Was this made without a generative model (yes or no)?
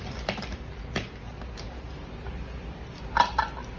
yes